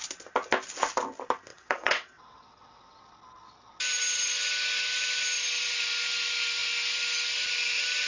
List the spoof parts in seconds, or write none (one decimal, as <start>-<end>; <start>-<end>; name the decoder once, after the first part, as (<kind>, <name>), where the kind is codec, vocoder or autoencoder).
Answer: 1.5-3.0 (vocoder, WaveNeXt)